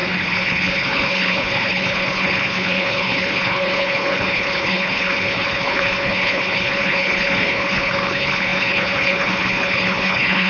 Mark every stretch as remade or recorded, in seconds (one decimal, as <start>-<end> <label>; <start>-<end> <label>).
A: 0.0-10.5 remade